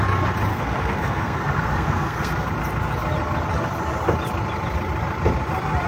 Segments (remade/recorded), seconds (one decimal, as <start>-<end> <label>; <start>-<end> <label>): 0.0-0.5 recorded; 0.5-2.5 remade; 2.5-5.9 recorded